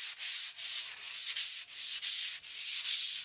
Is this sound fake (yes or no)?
no